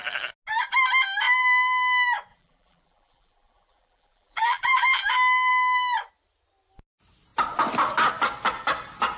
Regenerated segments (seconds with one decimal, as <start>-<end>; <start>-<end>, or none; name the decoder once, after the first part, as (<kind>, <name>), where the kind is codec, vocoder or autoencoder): 2.3-5.1 (vocoder, BigVGAN v2)